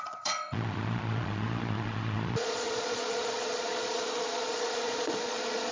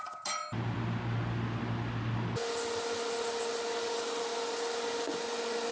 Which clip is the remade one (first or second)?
first